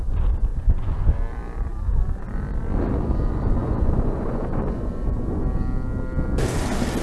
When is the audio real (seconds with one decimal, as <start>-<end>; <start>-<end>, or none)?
0.0-0.5; 1.2-3.6; 5.4-7.0